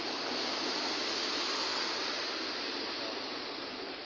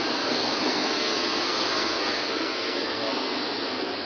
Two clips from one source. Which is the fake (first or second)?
second